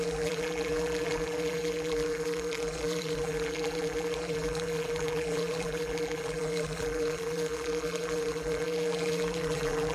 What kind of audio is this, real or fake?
fake